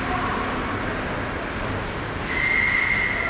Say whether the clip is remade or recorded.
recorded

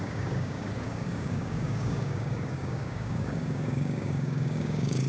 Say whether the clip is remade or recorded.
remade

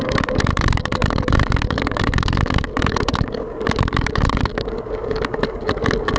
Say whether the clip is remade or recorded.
remade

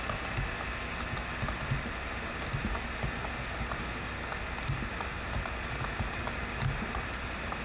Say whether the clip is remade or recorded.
recorded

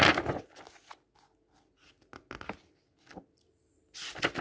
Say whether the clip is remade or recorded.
recorded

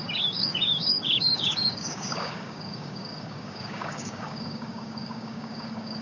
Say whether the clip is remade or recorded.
remade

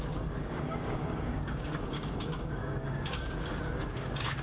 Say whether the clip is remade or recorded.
remade